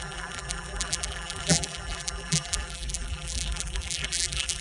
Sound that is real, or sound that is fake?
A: fake